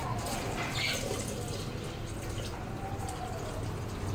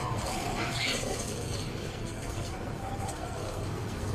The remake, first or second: second